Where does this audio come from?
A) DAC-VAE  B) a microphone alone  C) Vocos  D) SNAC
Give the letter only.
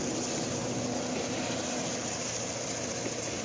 B